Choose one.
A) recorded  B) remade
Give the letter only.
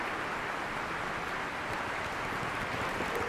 A